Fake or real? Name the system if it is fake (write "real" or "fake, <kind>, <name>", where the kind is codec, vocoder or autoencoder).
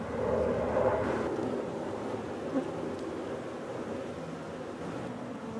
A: real